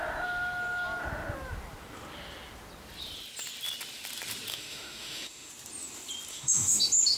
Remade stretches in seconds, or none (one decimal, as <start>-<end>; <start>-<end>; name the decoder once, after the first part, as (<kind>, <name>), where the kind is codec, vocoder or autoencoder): 4.5-5.5 (autoencoder, DAC-VAE); 6.3-6.8